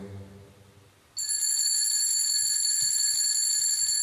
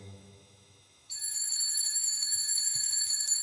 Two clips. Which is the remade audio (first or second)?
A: second